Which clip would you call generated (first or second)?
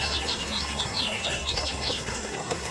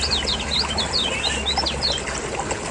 first